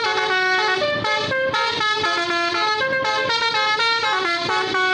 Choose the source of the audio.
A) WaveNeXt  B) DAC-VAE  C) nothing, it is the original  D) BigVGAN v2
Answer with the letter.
C